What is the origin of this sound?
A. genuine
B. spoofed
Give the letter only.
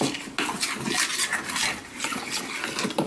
A